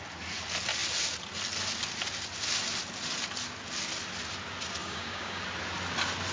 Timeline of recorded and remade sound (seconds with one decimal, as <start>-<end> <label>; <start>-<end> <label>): 0.0-4.8 recorded; 4.8-5.4 remade; 5.4-6.3 recorded